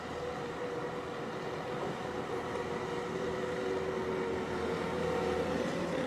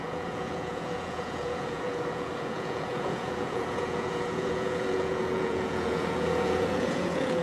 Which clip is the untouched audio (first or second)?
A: first